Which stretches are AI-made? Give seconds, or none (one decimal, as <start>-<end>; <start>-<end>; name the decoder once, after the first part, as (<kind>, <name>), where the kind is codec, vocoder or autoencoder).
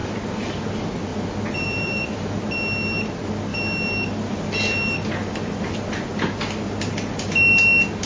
0.0-0.5 (vocoder, BigVGAN v2); 1.1-2.4